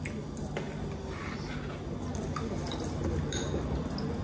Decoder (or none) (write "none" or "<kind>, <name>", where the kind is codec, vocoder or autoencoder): none